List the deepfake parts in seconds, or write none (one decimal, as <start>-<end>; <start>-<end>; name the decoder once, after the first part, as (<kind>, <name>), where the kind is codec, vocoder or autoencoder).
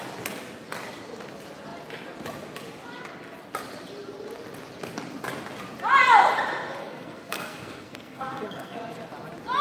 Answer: 6.8-8.8 (codec, SNAC)